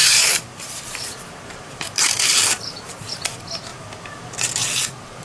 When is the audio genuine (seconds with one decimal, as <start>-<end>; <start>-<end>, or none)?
3.1-3.7; 4.6-5.2